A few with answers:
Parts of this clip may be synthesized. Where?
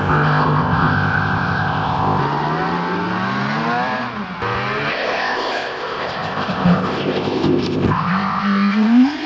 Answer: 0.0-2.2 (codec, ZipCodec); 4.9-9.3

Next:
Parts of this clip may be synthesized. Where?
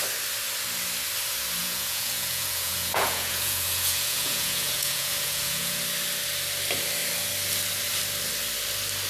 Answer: 1.6-5.8 (vocoder, Vocos)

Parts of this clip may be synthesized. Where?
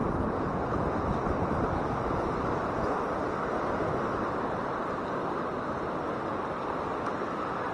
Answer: none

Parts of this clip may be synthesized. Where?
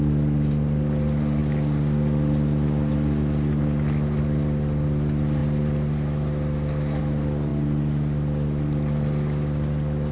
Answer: 5.4-7.0 (vocoder, BigVGAN v2)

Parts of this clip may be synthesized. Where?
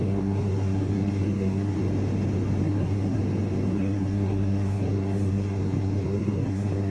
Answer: 0.0-1.8 (codec, SNAC); 2.6-3.2; 3.7-6.9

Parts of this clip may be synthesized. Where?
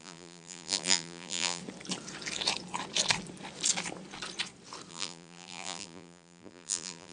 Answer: 0.0-1.6 (vocoder, BigVGAN v2); 4.9-7.1